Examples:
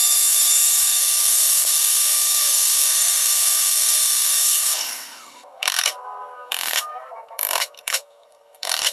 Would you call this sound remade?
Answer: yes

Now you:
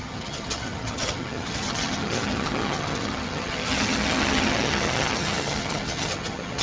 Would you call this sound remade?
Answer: yes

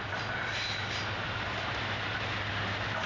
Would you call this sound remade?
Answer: no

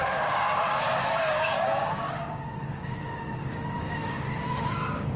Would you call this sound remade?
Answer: yes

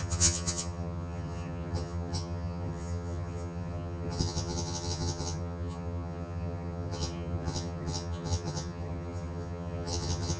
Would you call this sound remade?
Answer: yes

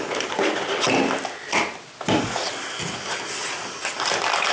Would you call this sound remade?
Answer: no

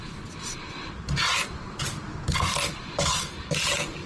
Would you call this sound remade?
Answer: no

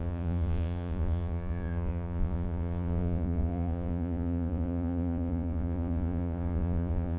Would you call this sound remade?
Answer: yes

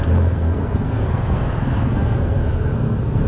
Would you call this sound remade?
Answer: yes